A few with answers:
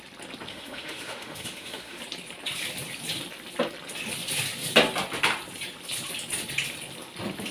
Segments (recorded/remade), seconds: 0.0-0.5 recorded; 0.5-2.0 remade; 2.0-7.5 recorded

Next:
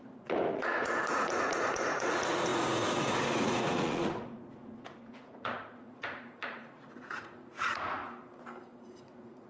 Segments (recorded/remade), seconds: 0.0-8.0 remade; 8.0-8.8 recorded; 8.8-9.5 remade

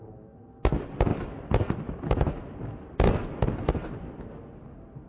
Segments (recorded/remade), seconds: 0.0-5.1 recorded

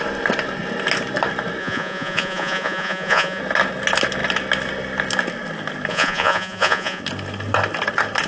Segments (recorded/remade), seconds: 0.0-1.6 recorded; 1.6-3.4 remade; 3.4-5.9 recorded; 5.9-7.0 remade; 7.0-8.3 recorded

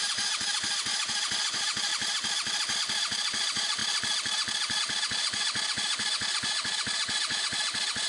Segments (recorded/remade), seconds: 0.0-1.9 remade; 1.9-2.8 recorded; 2.8-3.8 remade; 3.8-4.8 recorded; 4.8-8.1 remade

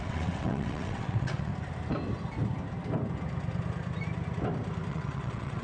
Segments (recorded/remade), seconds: 0.0-1.5 remade; 1.5-4.9 recorded; 4.9-5.6 remade